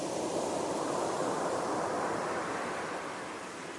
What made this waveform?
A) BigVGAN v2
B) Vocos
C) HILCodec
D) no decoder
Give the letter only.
A